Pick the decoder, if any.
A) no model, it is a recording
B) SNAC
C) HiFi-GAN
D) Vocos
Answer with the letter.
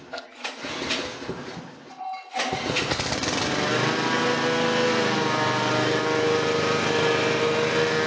A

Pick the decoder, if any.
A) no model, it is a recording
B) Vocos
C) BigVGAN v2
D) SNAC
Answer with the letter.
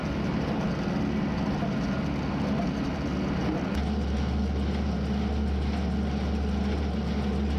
A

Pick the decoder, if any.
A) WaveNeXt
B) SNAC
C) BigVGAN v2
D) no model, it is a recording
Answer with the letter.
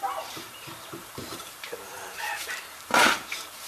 C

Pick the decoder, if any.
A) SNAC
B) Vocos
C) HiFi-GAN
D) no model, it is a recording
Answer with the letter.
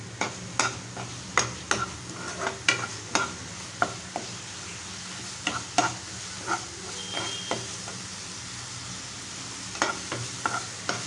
D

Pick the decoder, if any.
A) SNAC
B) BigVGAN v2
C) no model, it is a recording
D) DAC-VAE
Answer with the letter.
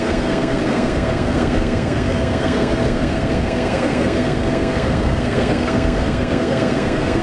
A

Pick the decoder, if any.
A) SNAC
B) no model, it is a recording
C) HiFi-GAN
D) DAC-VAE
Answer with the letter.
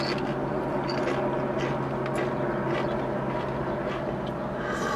B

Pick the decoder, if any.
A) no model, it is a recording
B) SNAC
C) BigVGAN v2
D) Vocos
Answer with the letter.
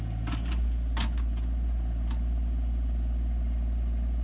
A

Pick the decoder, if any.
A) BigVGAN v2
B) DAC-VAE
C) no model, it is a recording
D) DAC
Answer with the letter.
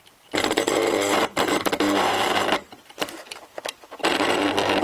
A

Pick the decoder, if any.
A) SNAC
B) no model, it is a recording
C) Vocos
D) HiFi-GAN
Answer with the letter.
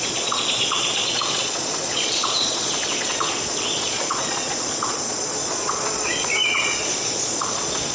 C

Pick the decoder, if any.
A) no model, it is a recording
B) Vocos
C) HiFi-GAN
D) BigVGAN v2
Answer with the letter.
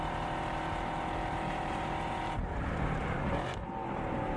D